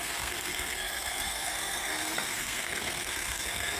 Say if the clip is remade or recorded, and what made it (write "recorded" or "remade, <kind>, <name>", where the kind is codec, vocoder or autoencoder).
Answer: remade, codec, SNAC